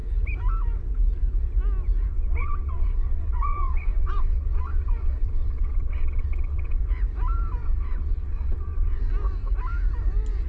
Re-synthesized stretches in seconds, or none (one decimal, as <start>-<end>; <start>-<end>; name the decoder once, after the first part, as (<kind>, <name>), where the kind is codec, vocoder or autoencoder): 2.1-6.8 (vocoder, WaveNeXt); 7.6-9.0